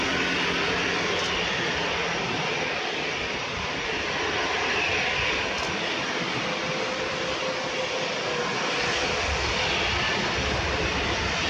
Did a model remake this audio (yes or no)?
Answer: no